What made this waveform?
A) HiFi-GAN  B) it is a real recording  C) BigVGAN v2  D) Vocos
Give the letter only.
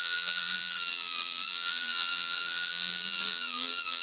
C